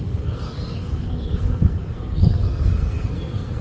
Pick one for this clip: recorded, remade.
remade